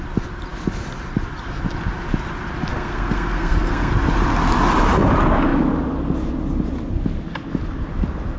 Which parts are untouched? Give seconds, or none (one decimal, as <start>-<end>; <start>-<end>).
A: 0.0-2.7; 3.9-8.4